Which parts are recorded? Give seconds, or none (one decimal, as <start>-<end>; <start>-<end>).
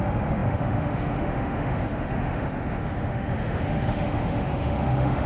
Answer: none